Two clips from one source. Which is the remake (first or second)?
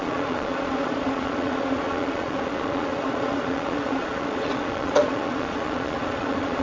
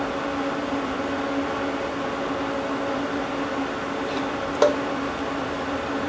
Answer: first